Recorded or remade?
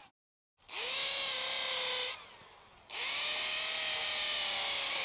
recorded